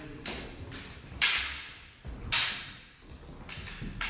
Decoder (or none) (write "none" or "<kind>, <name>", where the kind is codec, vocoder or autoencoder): none